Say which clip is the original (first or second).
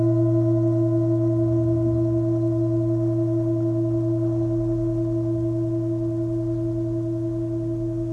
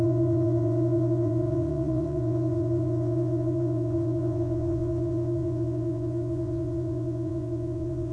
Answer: first